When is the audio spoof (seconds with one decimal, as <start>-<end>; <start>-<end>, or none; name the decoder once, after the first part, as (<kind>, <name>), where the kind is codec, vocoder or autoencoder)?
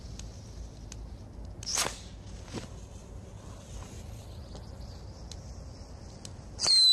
none